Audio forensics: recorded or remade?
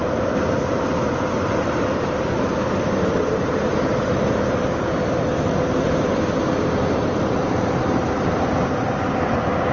remade